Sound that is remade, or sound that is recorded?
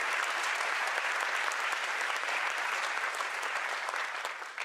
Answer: remade